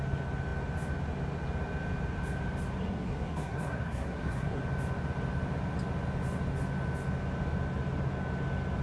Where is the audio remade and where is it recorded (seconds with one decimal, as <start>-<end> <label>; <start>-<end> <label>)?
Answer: 0.0-2.8 recorded; 2.8-4.6 remade; 4.6-8.8 recorded